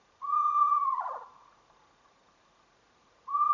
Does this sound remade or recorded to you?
remade